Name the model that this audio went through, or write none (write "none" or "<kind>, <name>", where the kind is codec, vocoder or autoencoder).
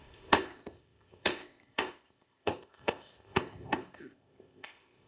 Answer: codec, ZipCodec